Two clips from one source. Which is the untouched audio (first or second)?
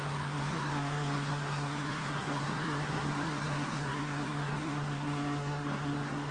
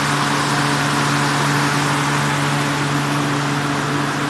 second